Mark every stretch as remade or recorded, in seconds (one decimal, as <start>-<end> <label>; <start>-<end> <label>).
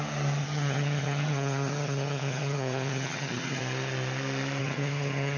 0.0-0.4 recorded; 0.4-3.6 remade; 3.6-4.6 recorded; 4.6-5.4 remade